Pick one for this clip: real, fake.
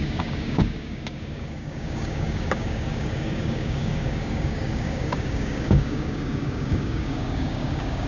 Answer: fake